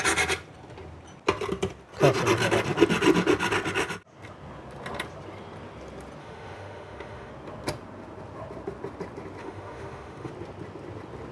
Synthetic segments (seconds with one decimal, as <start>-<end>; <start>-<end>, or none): 6.2-7.3; 9.4-10.3